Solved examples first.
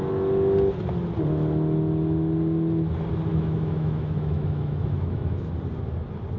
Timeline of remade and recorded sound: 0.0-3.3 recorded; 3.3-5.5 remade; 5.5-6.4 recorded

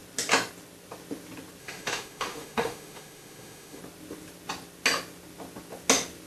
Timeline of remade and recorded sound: 0.0-1.6 recorded; 1.6-3.8 remade; 3.8-6.3 recorded

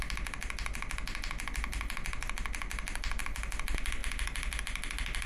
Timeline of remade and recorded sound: 0.0-5.3 recorded

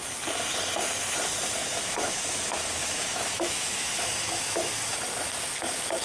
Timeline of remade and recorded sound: 0.0-1.6 recorded; 1.6-4.7 remade; 4.7-6.0 recorded

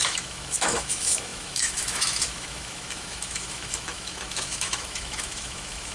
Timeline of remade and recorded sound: 0.0-5.9 remade

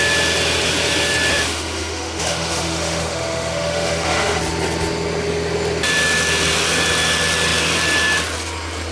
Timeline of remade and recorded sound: 0.0-1.3 recorded; 1.3-4.4 remade; 4.4-8.9 recorded

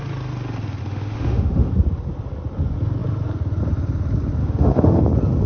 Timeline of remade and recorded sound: 0.0-0.8 recorded; 0.8-1.7 remade; 1.7-4.4 recorded; 4.4-5.0 remade; 5.0-5.5 recorded